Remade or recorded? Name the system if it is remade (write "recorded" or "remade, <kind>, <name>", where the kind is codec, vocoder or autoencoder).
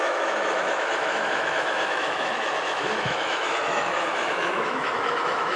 remade, autoencoder, DAC-VAE